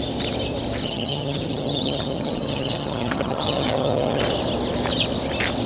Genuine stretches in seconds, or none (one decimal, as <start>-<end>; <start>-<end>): 0.0-0.8; 4.2-5.7